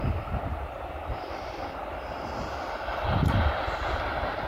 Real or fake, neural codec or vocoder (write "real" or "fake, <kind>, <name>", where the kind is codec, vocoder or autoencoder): real